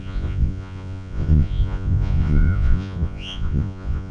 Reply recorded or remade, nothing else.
remade